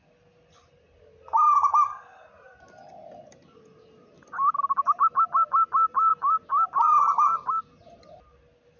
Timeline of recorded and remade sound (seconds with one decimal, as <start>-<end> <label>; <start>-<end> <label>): 0.0-8.8 recorded